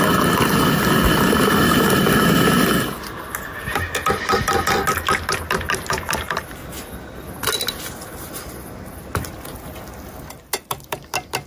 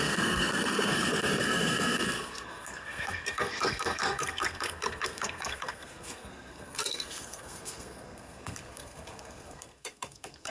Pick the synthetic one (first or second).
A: second